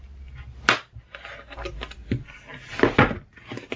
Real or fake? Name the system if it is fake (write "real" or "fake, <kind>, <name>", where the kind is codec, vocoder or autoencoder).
real